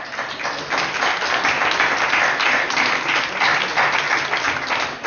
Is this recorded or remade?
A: recorded